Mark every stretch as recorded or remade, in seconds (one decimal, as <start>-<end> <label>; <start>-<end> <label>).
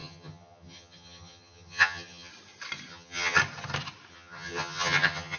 0.0-2.3 remade; 2.3-2.9 recorded; 2.9-3.4 remade; 3.4-4.1 recorded; 4.1-5.4 remade